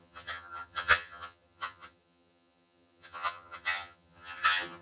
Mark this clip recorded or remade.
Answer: remade